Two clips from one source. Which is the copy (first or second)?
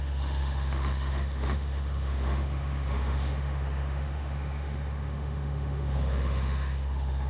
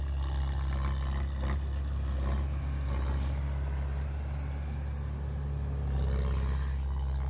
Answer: first